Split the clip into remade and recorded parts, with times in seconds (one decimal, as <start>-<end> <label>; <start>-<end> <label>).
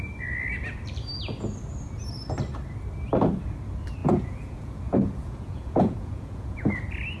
0.0-4.0 recorded; 4.0-6.7 remade; 6.7-7.2 recorded